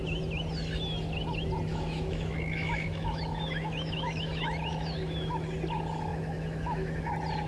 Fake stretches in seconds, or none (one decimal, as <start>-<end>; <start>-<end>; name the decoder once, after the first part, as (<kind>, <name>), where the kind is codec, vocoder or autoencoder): 1.7-5.3 (autoencoder, DAC-VAE); 6.1-7.1